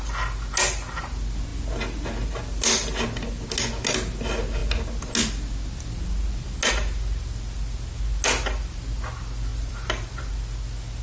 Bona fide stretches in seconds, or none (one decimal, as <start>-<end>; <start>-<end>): 0.0-9.5; 10.3-11.0